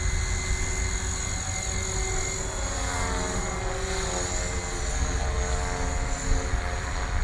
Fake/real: real